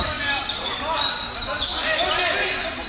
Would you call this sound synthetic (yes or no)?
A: no